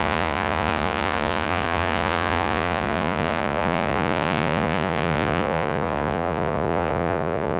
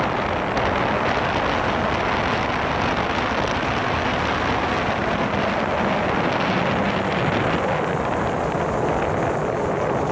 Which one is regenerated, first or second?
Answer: first